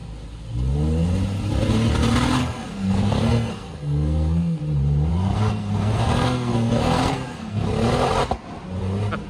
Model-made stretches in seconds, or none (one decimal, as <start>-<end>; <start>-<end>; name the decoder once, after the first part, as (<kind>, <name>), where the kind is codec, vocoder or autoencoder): 2.4-4.6 (codec, SNAC); 5.1-7.7